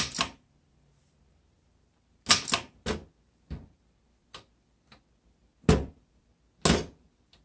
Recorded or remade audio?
recorded